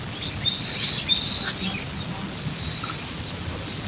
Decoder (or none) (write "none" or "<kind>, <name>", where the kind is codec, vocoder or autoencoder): none